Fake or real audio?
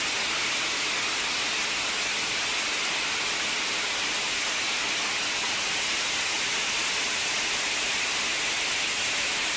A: real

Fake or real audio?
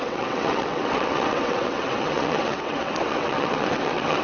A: fake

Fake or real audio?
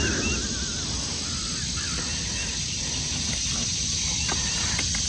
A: real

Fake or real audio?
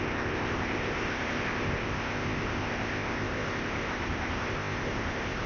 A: fake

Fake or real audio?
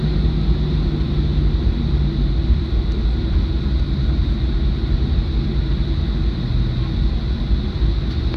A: real